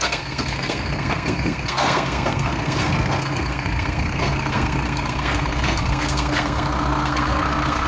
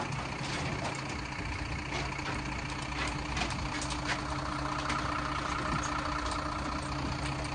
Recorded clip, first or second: second